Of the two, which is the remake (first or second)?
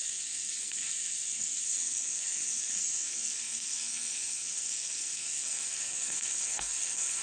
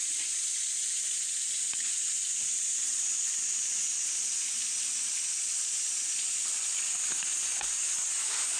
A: first